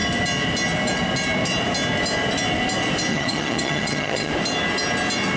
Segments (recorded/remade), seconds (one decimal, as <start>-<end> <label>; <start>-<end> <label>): 0.0-3.1 recorded; 3.1-4.3 remade; 4.3-5.4 recorded